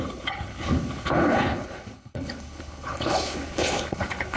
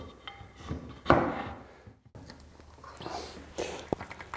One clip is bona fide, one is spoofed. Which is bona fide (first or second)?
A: second